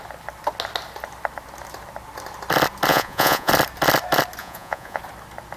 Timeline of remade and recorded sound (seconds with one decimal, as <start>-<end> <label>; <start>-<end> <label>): 0.0-2.9 recorded; 2.9-3.5 remade; 3.5-4.4 recorded; 4.4-5.0 remade; 5.0-5.6 recorded